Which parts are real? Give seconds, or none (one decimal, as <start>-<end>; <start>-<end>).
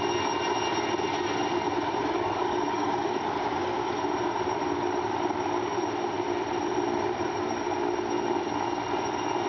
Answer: 0.0-2.0; 4.0-9.5